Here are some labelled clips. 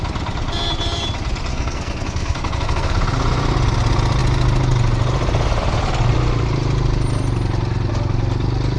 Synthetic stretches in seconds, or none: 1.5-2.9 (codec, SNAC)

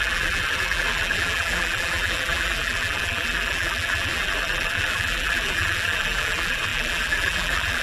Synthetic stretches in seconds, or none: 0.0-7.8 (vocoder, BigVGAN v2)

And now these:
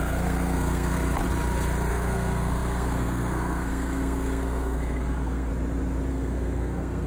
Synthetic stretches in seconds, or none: 0.0-1.0 (codec, SNAC); 1.9-5.5; 6.1-7.1

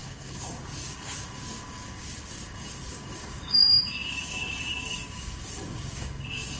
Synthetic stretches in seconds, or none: 0.0-6.6 (codec, DAC)

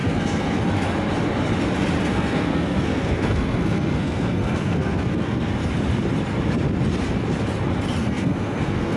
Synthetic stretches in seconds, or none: 0.0-0.6 (codec, SNAC); 2.1-5.5; 8.0-9.0

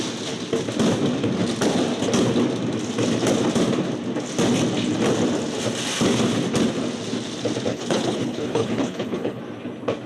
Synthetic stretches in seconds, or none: 7.7-9.4 (codec, HILCodec)